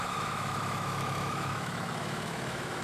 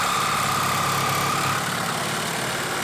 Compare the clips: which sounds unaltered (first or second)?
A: second